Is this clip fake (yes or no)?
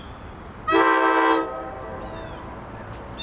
no